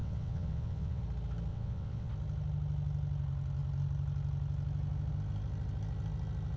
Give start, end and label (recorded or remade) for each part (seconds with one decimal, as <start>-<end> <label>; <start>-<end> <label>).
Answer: 0.0-1.0 remade; 1.0-1.5 recorded; 1.5-2.1 remade; 2.1-6.6 recorded